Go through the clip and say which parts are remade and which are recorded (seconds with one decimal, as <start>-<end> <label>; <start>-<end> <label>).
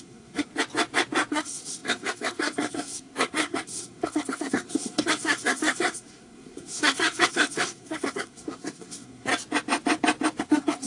0.0-0.5 remade; 0.5-1.3 recorded; 1.3-9.3 remade; 9.3-10.4 recorded; 10.4-10.9 remade